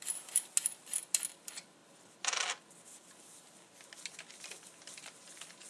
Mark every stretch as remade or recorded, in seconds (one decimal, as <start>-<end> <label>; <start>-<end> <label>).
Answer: 0.0-5.7 recorded